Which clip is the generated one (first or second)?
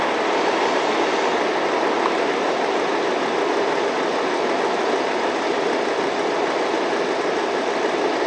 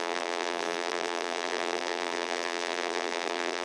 second